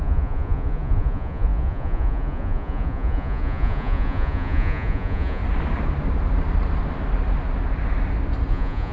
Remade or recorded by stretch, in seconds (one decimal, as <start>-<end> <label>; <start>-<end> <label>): 0.0-5.4 remade; 5.4-8.5 recorded; 8.5-8.9 remade